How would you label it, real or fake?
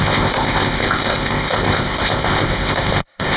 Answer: fake